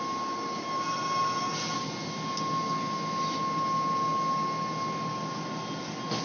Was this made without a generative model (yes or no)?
yes